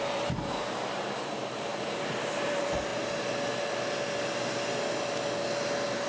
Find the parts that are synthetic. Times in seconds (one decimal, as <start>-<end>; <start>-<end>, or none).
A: 0.0-1.7; 2.3-2.9